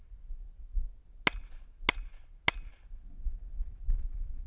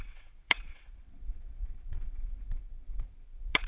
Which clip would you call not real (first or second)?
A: second